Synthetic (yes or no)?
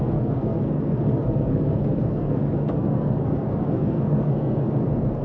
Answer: yes